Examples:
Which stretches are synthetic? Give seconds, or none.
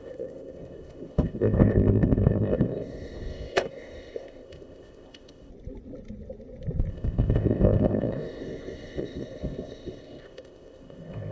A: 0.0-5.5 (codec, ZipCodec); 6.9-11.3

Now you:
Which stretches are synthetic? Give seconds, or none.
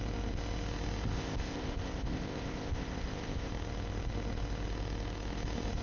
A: 1.1-3.5 (codec, ZipCodec)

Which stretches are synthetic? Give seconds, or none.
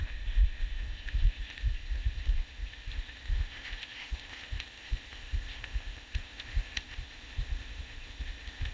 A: 0.0-8.7 (codec, ZipCodec)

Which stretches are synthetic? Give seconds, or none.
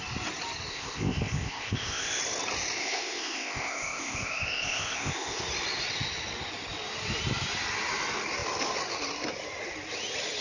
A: 0.7-2.2 (codec, ZipCodec); 2.8-5.4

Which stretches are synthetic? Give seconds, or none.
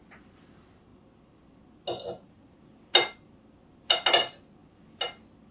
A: none